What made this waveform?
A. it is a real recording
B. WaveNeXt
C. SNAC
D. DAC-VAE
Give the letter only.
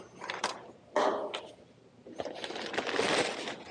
A